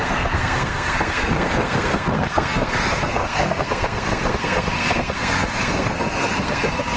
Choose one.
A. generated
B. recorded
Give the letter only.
A